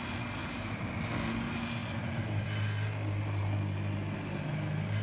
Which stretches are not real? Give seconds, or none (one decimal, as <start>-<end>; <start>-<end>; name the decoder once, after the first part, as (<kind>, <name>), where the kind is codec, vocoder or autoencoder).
0.4-0.9 (vocoder, BigVGAN v2)